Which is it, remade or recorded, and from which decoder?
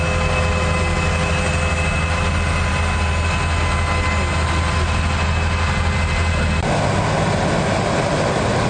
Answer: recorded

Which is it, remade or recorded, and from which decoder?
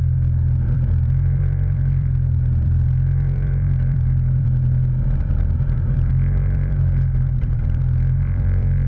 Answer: remade, vocoder, BigVGAN v2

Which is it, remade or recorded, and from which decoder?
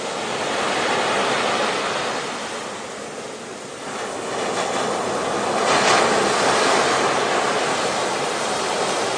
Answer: recorded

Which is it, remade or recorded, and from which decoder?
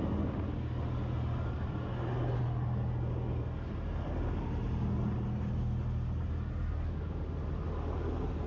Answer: recorded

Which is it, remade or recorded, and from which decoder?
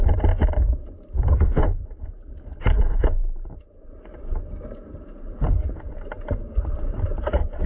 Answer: remade, vocoder, BigVGAN v2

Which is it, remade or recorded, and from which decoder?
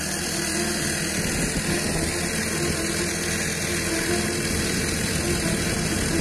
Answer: recorded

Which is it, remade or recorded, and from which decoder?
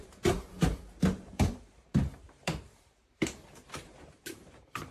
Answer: remade, vocoder, BigVGAN v2